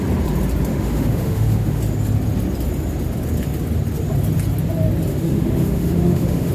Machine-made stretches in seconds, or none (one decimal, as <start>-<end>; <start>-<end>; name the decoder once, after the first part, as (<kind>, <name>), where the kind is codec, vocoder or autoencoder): 0.7-1.8 (autoencoder, DAC-VAE); 5.1-6.5